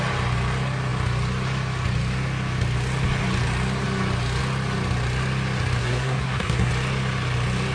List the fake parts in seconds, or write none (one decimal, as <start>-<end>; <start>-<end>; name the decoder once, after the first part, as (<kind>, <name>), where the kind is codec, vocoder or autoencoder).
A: 5.8-6.7 (codec, SNAC)